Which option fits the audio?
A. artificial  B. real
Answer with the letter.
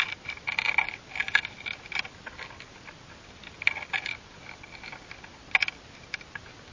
B